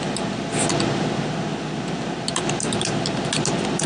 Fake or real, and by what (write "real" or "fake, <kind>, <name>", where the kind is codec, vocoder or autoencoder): real